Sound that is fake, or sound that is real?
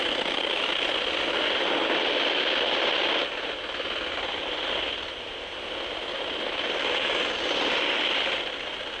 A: real